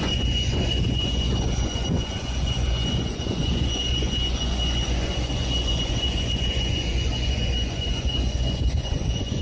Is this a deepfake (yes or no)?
yes